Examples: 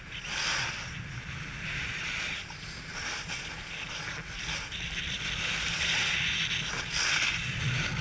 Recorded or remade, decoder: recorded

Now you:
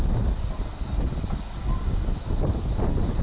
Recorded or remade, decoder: recorded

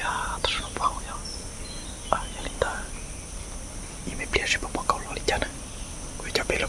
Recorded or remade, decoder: recorded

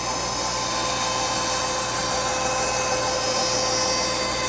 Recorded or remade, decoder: recorded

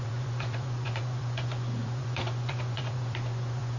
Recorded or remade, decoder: remade, vocoder, Vocos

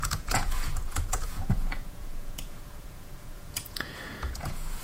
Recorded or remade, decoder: remade, vocoder, Vocos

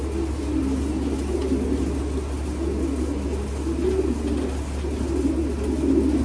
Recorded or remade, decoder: recorded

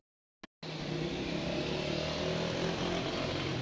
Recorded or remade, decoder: recorded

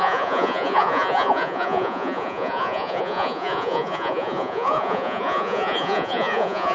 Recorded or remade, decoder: remade, vocoder, Vocos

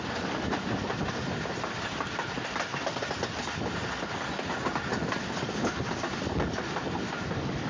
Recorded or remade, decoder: recorded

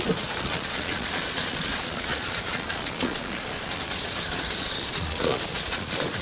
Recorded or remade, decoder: remade, vocoder, Vocos